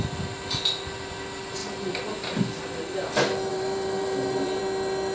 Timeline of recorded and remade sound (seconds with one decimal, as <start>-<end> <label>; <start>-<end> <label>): 0.0-3.5 recorded; 3.5-4.6 remade; 4.6-5.1 recorded